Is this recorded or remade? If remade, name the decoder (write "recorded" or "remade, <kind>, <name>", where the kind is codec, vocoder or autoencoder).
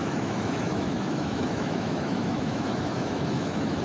remade, autoencoder, DAC-VAE